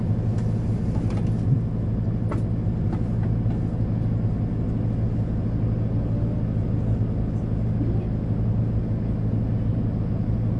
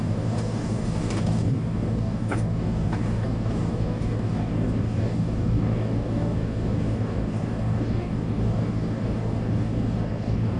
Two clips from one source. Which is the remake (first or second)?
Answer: second